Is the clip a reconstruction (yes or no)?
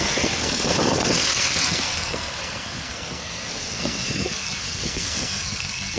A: yes